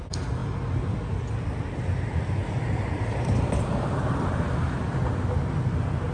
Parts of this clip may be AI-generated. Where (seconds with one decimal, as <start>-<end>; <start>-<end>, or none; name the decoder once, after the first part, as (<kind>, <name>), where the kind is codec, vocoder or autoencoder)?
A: none